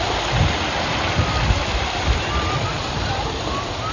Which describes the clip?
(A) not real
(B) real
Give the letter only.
B